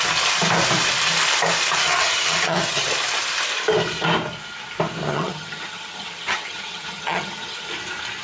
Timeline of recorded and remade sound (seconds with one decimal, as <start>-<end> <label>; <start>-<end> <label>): 0.0-1.8 recorded; 1.8-2.9 remade; 2.9-5.0 recorded; 5.0-7.7 remade; 7.7-8.2 recorded